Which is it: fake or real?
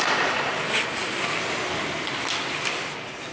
real